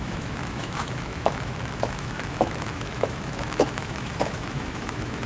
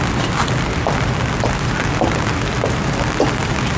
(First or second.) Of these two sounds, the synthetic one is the first